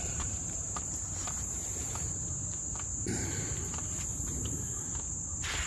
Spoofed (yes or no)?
yes